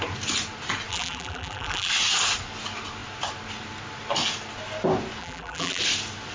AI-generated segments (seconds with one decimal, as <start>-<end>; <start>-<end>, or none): 0.9-1.9; 5.2-5.8